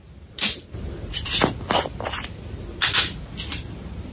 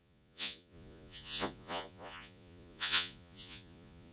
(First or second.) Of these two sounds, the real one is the first